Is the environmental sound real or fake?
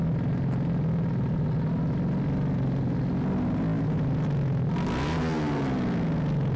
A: real